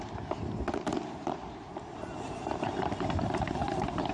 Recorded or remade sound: remade